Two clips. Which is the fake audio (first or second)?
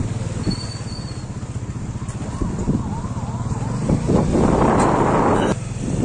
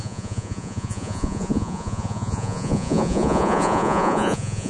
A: second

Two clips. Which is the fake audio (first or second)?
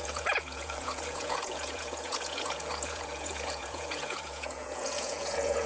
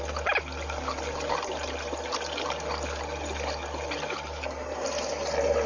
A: first